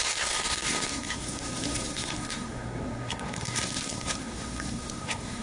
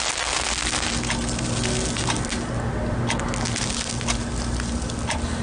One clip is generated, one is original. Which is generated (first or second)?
first